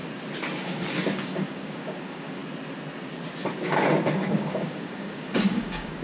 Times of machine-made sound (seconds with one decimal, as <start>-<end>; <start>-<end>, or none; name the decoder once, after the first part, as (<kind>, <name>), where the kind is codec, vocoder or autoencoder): 0.6-2.4 (codec, DAC); 4.0-6.0